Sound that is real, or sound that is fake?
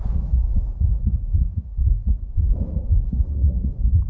fake